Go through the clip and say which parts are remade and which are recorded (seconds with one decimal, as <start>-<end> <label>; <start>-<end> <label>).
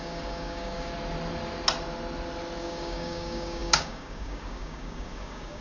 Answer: 0.0-0.9 remade; 0.9-2.6 recorded; 2.6-5.6 remade